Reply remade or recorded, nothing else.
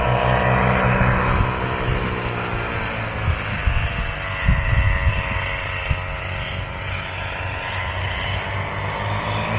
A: recorded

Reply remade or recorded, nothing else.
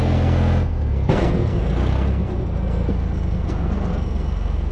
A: remade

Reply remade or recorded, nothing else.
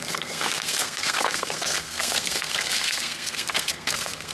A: remade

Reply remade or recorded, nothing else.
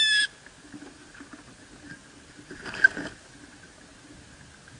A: recorded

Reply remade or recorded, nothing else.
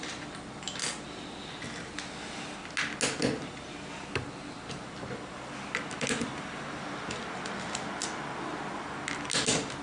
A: recorded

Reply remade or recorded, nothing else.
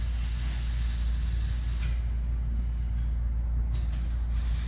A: recorded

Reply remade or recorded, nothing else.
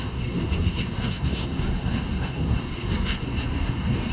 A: remade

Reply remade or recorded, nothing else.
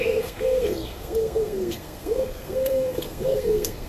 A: remade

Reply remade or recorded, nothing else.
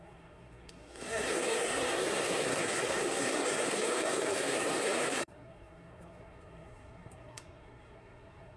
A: remade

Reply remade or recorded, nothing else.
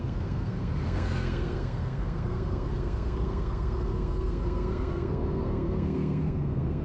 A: remade